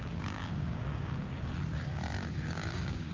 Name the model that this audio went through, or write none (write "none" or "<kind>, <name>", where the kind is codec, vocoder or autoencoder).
codec, DAC